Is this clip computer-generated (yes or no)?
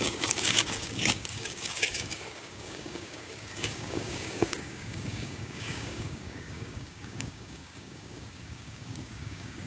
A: yes